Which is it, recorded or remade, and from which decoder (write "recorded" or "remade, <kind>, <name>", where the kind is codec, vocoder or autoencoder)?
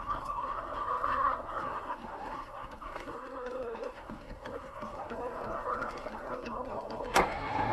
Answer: remade, codec, SNAC